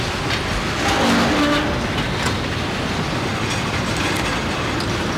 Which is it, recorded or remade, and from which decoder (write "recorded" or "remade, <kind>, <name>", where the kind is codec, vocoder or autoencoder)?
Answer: recorded